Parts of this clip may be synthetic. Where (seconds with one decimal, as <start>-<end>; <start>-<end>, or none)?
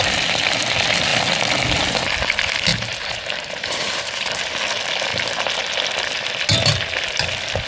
2.7-4.3